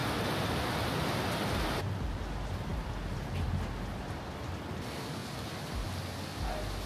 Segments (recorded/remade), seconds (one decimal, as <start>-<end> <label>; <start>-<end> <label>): 0.0-6.9 recorded